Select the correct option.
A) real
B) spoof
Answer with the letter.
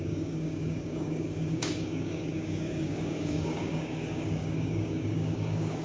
B